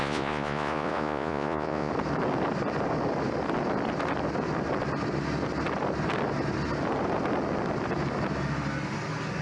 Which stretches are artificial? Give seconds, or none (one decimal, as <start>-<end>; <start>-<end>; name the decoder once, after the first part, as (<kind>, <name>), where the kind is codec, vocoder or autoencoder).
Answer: 0.0-1.9 (vocoder, Vocos)